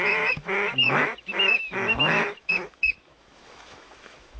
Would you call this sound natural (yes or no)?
no